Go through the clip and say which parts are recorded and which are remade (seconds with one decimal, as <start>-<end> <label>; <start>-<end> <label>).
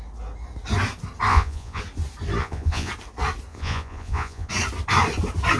0.0-1.3 recorded; 1.3-1.8 remade; 1.8-2.4 recorded; 2.4-2.9 remade; 2.9-3.5 recorded; 3.5-4.5 remade; 4.5-5.6 recorded